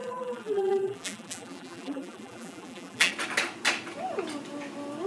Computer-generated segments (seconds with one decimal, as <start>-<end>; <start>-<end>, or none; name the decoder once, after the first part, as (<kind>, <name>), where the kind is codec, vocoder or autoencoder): 0.0-3.1 (vocoder, BigVGAN v2)

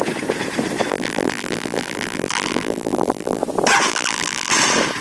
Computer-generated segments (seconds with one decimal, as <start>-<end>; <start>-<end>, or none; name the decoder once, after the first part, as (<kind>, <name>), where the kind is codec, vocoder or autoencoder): 0.9-3.4 (vocoder, BigVGAN v2); 3.9-4.5

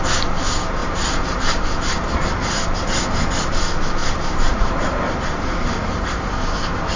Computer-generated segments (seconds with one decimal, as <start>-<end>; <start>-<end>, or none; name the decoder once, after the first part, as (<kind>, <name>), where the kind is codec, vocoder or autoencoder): 0.8-1.6 (vocoder, BigVGAN v2); 4.0-6.3

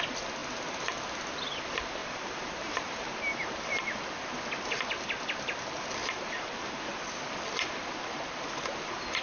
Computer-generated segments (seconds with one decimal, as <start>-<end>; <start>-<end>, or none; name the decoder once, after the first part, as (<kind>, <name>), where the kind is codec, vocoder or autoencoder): 2.0-3.8 (vocoder, BigVGAN v2); 6.0-6.7